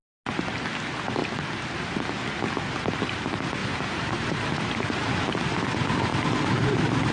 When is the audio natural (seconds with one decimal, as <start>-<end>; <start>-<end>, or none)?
0.0-3.6; 5.3-7.1